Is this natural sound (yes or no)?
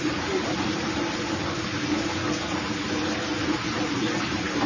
no